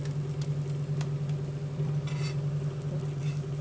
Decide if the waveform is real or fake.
real